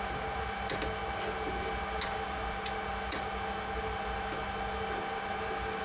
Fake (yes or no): no